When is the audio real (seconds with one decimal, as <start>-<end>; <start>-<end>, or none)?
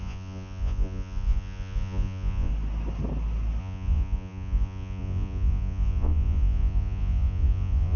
2.5-3.6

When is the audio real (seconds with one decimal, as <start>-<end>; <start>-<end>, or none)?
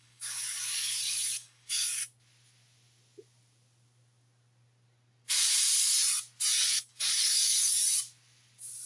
2.0-6.7; 7.8-8.9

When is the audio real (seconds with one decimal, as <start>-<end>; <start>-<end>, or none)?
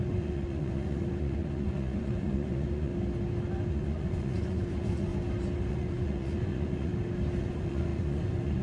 2.9-3.7; 5.1-5.7; 6.9-7.4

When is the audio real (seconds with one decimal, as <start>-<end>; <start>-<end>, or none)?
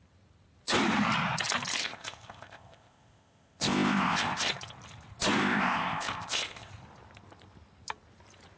0.0-1.8; 4.5-5.4; 6.7-8.6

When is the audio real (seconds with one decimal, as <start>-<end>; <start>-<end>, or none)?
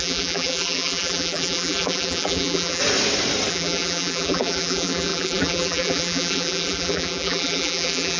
2.8-3.5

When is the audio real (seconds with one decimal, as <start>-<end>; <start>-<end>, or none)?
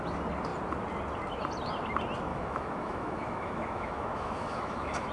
0.0-2.3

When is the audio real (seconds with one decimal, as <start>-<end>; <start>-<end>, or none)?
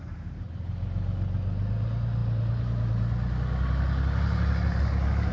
0.0-5.3